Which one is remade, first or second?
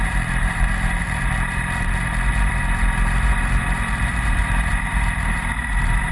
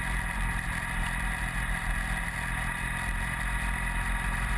first